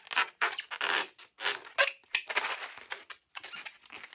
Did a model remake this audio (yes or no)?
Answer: no